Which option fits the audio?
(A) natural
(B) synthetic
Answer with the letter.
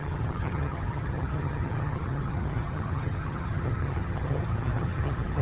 B